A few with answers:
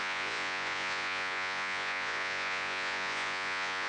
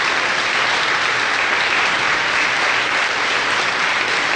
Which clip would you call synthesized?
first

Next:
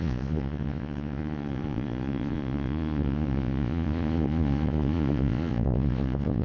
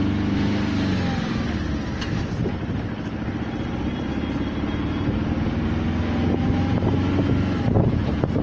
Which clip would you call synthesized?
first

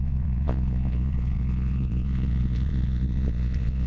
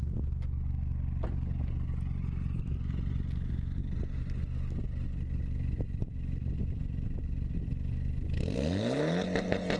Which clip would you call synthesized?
first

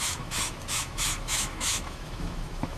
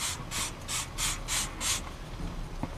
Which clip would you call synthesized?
first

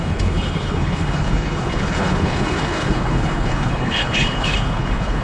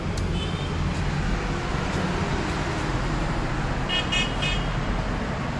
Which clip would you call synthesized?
first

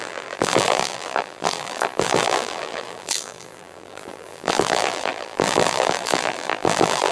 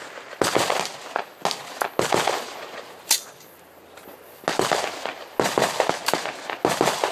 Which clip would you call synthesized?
first